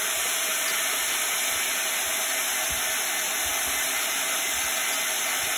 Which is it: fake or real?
real